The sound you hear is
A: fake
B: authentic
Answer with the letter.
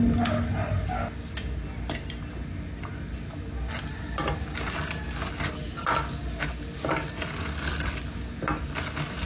B